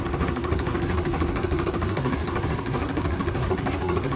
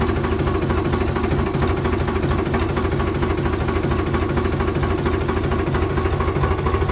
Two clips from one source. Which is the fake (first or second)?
first